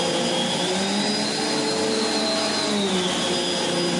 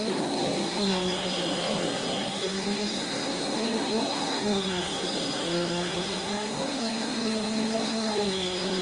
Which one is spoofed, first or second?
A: second